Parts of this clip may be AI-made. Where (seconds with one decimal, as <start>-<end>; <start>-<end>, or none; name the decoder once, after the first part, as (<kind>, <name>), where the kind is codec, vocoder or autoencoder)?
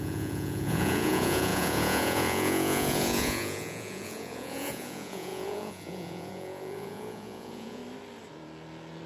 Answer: 0.0-7.8 (vocoder, Vocos)